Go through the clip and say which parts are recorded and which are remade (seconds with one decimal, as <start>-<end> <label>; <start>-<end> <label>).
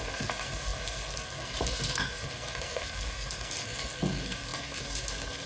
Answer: 0.0-5.5 remade